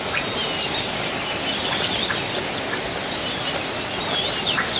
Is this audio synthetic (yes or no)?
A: no